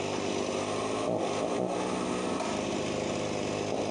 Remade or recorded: recorded